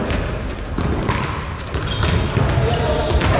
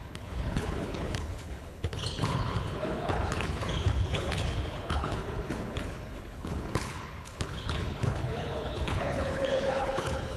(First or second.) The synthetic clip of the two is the second